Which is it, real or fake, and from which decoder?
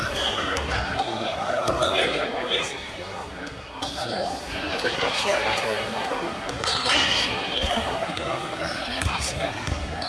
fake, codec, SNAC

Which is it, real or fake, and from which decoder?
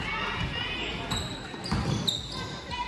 real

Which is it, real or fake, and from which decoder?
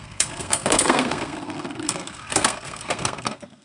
fake, codec, SNAC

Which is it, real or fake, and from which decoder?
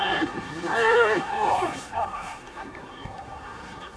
fake, codec, SNAC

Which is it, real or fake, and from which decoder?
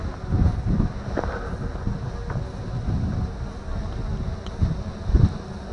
real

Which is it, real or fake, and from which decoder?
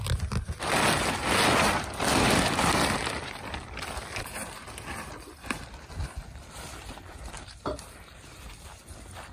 real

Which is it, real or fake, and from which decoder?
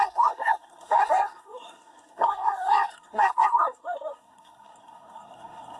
fake, codec, SNAC